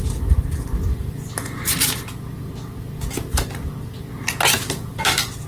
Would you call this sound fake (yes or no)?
no